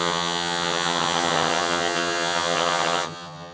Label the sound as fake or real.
fake